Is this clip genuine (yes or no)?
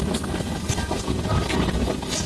yes